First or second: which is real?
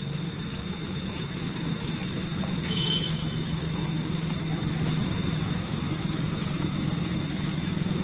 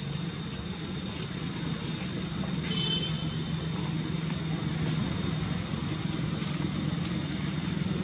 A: second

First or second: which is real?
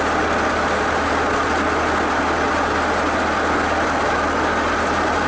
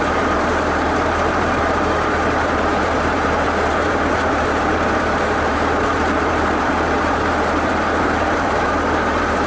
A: first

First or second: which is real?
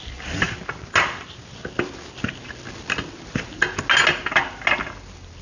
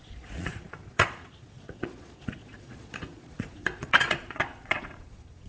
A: first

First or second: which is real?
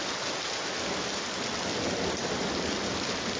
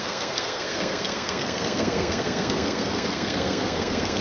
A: first